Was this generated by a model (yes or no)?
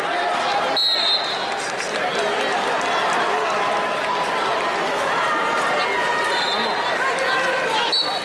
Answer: no